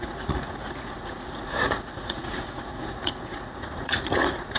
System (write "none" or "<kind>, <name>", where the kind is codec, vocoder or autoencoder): vocoder, Vocos